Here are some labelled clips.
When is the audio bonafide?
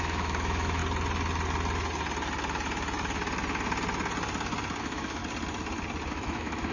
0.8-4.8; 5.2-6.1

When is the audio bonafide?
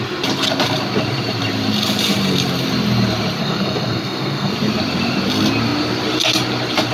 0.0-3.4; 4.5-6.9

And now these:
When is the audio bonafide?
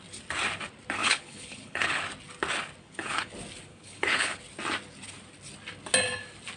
0.0-1.0; 2.0-2.8; 3.3-3.7; 4.4-6.6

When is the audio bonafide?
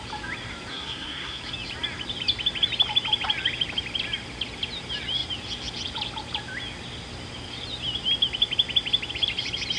0.0-0.7; 1.4-9.8